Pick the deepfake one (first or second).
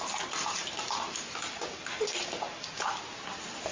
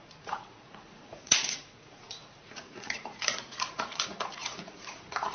second